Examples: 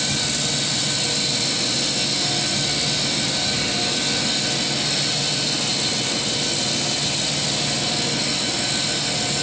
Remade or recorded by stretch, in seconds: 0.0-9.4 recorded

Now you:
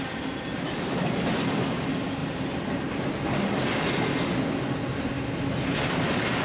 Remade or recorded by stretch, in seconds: 0.0-6.4 recorded

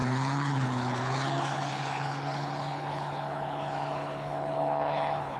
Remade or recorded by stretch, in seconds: 0.0-5.4 remade

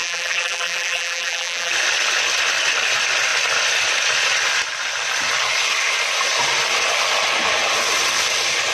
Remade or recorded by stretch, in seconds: 0.0-1.7 remade; 1.7-8.7 recorded

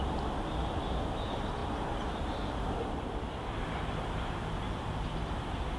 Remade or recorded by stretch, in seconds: 0.0-5.8 recorded

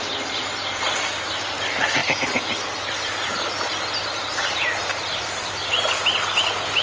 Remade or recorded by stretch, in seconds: 0.0-6.8 recorded

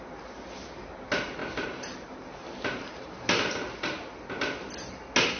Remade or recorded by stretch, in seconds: 0.0-1.4 recorded; 1.4-4.1 remade; 4.1-5.4 recorded